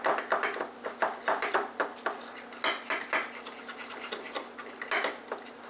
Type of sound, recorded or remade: recorded